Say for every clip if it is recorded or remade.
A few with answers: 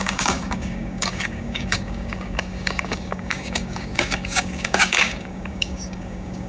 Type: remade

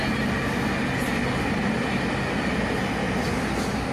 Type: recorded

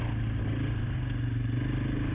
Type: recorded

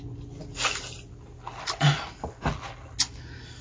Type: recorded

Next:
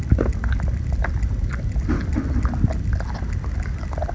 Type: recorded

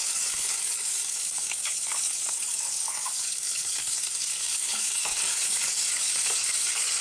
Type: remade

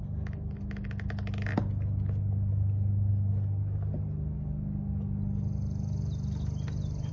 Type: recorded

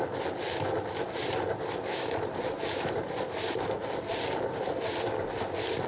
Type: recorded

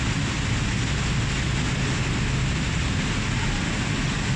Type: recorded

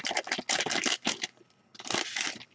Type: recorded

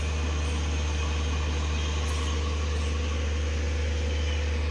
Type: recorded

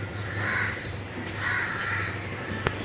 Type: recorded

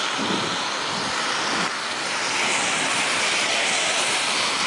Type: recorded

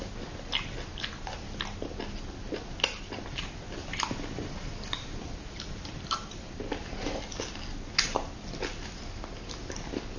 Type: recorded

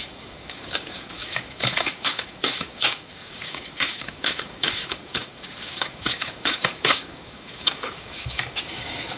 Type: remade